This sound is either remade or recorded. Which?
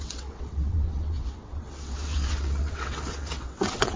remade